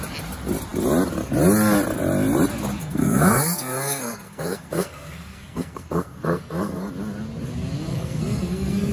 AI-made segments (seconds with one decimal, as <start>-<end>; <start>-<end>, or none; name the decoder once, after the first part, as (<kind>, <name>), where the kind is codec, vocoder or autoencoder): 2.8-6.9 (codec, SNAC); 7.9-8.9